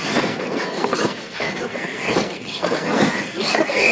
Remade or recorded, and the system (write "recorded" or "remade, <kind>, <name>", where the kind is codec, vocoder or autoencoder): remade, codec, SNAC